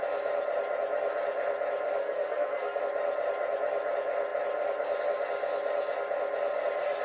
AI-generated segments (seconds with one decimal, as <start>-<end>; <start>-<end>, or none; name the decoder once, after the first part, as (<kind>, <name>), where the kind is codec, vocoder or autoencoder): 2.0-2.8 (codec, SNAC)